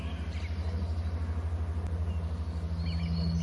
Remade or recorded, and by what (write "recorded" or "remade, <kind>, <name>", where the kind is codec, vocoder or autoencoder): recorded